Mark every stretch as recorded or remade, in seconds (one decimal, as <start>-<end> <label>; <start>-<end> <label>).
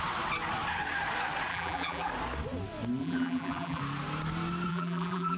0.0-1.5 recorded; 1.5-2.1 remade; 2.1-3.0 recorded; 3.0-3.8 remade; 3.8-4.7 recorded; 4.7-5.4 remade